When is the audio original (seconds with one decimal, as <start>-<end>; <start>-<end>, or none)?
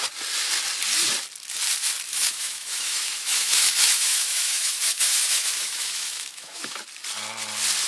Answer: 0.0-2.1; 6.8-7.9